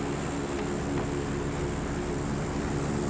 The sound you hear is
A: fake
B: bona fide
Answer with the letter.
B